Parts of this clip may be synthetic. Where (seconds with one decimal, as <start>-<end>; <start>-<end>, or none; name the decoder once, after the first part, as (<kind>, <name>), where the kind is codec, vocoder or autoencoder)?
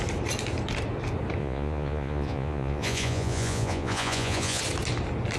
1.4-4.6 (vocoder, Vocos)